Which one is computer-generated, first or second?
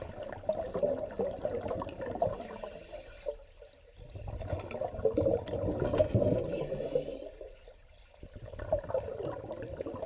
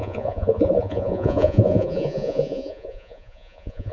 second